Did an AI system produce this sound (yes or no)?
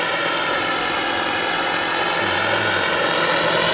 no